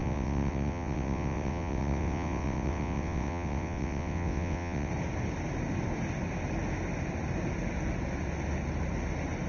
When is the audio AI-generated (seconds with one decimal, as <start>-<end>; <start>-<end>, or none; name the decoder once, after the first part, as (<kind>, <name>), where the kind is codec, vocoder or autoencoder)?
0.0-4.9 (vocoder, WaveNeXt)